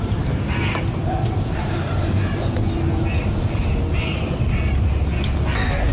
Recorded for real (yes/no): yes